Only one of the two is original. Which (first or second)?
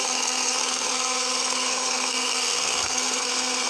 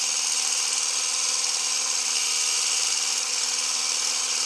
second